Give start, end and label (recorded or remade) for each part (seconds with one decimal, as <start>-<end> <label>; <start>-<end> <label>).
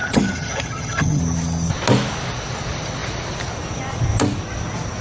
0.0-1.2 remade; 1.2-5.0 recorded